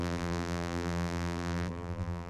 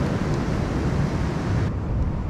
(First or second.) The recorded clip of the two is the second